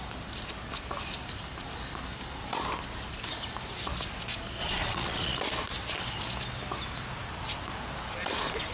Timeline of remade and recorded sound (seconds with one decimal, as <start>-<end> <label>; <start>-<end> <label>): 0.0-4.6 recorded; 4.6-5.4 remade; 5.4-8.7 recorded